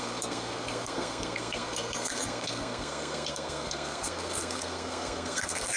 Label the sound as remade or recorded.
remade